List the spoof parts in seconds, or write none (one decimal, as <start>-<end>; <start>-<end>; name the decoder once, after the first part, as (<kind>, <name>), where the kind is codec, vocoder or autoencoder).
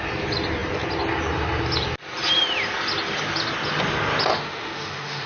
4.3-5.3 (autoencoder, DAC-VAE)